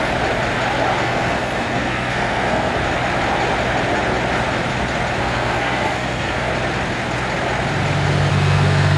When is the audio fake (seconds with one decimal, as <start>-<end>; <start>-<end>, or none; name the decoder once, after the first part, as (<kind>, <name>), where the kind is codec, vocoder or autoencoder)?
1.0-2.7 (codec, SNAC); 5.2-6.5; 8.3-9.0